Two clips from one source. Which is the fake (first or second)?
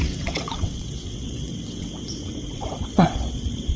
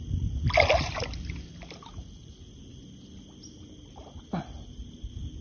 first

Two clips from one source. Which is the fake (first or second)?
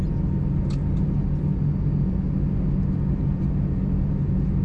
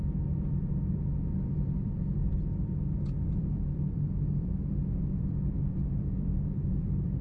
second